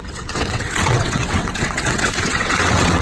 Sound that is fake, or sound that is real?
fake